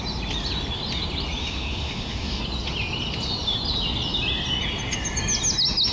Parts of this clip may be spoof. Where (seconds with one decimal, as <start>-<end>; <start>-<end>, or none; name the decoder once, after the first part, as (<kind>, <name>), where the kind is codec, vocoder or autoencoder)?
1.4-2.4 (autoencoder, DAC-VAE)

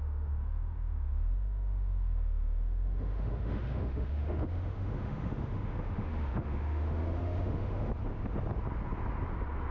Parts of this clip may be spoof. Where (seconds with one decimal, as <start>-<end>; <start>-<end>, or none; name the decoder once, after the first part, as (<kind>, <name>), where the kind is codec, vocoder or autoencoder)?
0.0-7.9 (autoencoder, DAC-VAE)